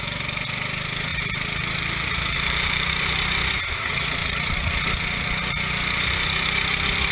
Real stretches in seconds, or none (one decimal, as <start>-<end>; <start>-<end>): 0.0-1.1; 3.7-4.2; 4.8-7.1